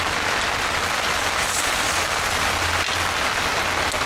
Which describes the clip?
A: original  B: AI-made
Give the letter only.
A